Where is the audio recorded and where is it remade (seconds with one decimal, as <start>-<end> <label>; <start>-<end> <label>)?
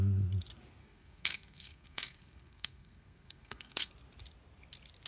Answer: 0.0-0.8 recorded; 0.8-3.9 remade; 3.9-5.1 recorded